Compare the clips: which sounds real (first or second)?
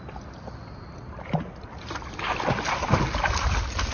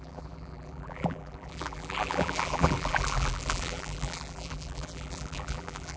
first